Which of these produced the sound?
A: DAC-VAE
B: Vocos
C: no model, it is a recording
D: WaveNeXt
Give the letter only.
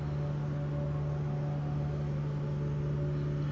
C